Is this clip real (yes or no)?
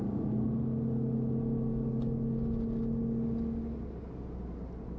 yes